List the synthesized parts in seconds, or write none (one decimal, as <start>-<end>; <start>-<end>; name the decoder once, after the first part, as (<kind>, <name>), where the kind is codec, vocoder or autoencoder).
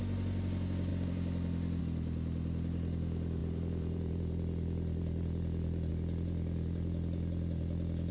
0.9-1.8 (vocoder, BigVGAN v2); 3.4-5.9